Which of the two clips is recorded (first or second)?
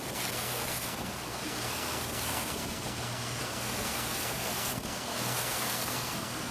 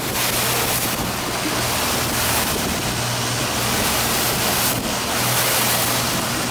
second